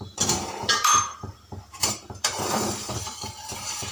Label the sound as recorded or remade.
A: remade